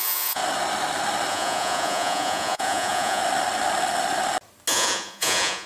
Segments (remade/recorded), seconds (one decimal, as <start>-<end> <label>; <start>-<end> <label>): 0.0-0.4 remade; 0.4-1.3 recorded; 1.3-3.2 remade; 3.2-4.7 recorded; 4.7-5.7 remade